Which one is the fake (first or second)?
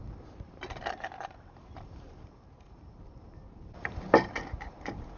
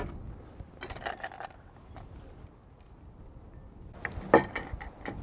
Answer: first